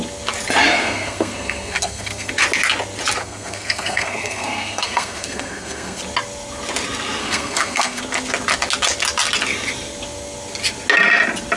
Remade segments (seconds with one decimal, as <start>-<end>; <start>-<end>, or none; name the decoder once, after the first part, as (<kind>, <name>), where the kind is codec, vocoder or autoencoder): 0.7-2.3 (codec, SNAC); 3.2-6.0; 7.2-8.0